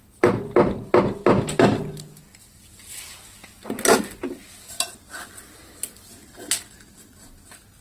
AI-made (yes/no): no